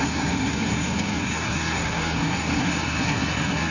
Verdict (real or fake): fake